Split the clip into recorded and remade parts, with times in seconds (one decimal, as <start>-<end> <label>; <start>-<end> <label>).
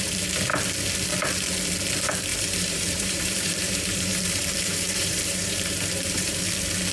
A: 0.0-2.3 recorded; 2.3-6.4 remade; 6.4-6.9 recorded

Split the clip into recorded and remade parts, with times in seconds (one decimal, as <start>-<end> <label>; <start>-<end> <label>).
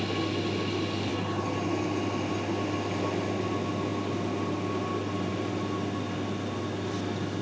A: 0.0-7.4 recorded